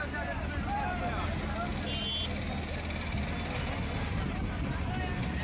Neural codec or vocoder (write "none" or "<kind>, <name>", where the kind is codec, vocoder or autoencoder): none